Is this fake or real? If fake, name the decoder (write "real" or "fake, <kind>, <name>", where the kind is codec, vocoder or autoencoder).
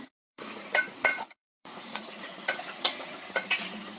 fake, vocoder, Vocos